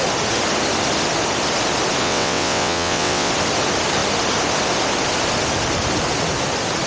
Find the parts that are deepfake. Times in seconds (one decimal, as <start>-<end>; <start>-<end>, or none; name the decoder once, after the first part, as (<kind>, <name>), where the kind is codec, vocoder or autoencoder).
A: 2.0-3.3 (vocoder, WaveNeXt)